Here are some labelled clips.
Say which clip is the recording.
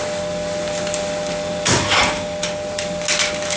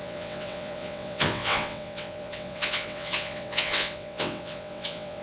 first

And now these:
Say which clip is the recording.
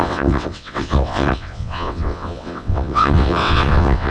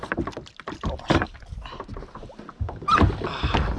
second